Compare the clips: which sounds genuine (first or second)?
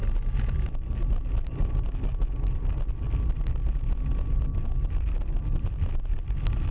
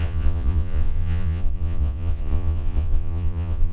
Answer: first